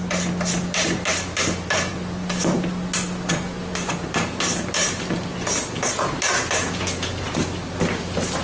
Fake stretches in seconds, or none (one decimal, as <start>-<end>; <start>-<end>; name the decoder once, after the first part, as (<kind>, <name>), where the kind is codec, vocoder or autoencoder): none